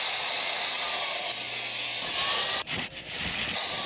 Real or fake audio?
real